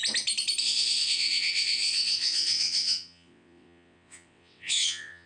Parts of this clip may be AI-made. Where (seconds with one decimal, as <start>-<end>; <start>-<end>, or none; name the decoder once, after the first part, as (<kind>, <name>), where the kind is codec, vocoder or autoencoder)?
0.6-5.3 (vocoder, WaveNeXt)